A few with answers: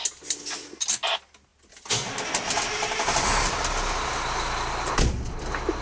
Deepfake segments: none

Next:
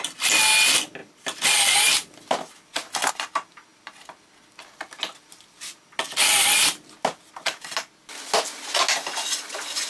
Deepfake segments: none

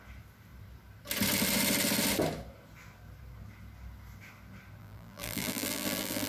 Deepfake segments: 4.8-6.3 (vocoder, BigVGAN v2)

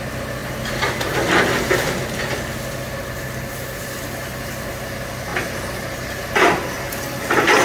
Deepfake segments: none

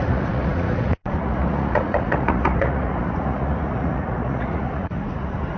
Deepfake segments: 0.0-5.6 (vocoder, Vocos)

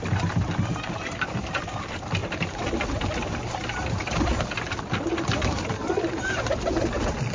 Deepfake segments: none